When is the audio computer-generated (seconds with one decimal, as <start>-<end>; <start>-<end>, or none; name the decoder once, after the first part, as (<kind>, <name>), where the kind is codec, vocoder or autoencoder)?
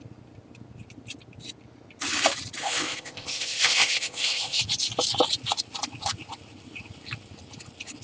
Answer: 2.6-4.6 (codec, ZipCodec)